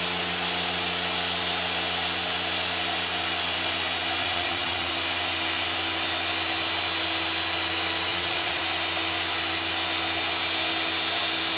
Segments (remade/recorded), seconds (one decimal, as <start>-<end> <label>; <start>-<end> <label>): 0.0-4.2 recorded; 4.2-4.9 remade; 4.9-8.1 recorded; 8.1-8.6 remade; 8.6-11.6 recorded